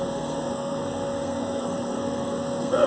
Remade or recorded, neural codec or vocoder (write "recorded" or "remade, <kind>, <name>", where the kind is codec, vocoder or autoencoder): remade, codec, SNAC